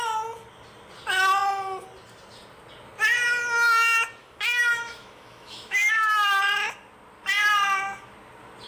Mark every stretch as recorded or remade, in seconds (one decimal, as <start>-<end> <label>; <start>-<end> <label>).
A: 0.0-4.2 recorded; 4.2-6.4 remade; 6.4-8.7 recorded